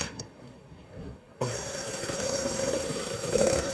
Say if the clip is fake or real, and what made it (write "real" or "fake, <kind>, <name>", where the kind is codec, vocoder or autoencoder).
fake, codec, SNAC